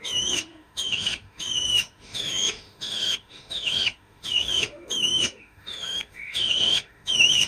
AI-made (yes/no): yes